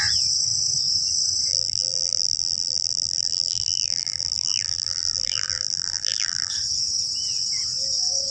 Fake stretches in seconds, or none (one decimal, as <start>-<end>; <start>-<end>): 1.5-6.5

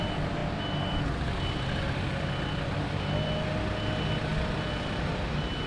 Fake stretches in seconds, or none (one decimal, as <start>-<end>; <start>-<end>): none

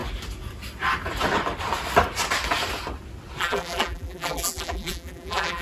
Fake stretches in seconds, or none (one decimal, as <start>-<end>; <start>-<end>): 3.4-5.6

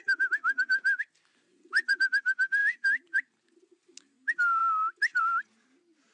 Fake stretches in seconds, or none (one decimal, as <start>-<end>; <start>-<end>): 1.3-1.9; 2.6-3.4

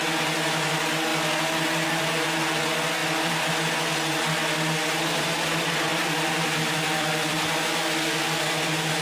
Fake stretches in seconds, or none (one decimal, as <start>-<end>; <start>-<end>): 3.0-3.5; 5.9-8.5

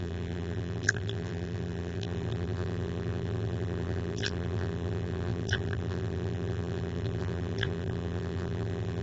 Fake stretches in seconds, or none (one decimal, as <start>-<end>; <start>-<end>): 0.0-9.0